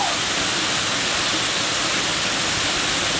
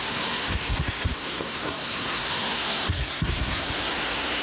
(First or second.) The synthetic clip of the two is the second